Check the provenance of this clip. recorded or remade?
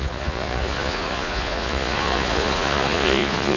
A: remade